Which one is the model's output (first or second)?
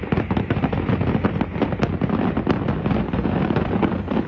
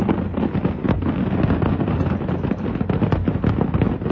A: first